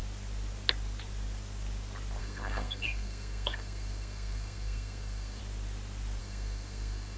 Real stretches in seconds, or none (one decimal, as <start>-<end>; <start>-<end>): 0.0-2.2; 5.4-6.2